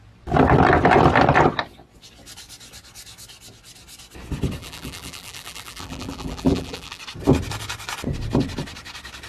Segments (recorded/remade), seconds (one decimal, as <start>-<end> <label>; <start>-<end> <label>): 0.0-4.6 recorded; 4.6-7.0 remade; 7.0-9.3 recorded